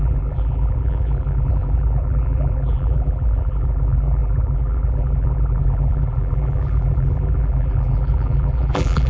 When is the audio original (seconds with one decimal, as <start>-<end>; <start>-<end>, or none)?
none

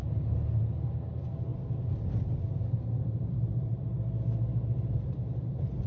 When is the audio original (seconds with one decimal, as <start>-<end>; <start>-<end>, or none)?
0.0-5.9

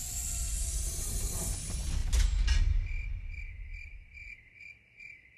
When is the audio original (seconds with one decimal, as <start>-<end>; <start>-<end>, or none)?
0.0-0.5; 1.4-5.4

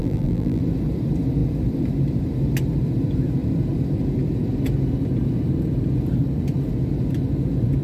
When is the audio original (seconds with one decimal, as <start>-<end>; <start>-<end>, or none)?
0.6-7.8

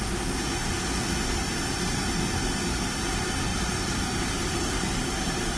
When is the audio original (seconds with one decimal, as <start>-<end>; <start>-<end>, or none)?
0.0-3.5

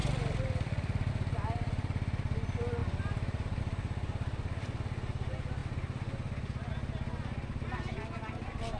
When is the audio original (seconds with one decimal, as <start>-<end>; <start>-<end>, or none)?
1.1-8.8

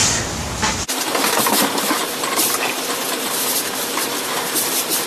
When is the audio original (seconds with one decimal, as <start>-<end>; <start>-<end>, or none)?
0.0-5.1